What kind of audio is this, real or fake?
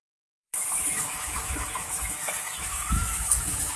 fake